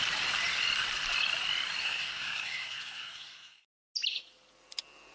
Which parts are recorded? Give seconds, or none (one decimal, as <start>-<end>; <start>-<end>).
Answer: 0.0-1.8; 3.8-5.1